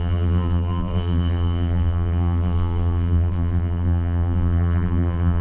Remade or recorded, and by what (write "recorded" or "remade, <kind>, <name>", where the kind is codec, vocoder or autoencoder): remade, vocoder, BigVGAN v2